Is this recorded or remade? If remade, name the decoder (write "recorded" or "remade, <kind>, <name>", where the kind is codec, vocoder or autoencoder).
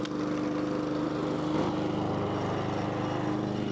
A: recorded